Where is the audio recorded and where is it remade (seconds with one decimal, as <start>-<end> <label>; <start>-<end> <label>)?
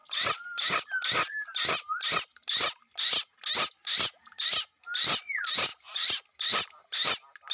0.0-7.5 recorded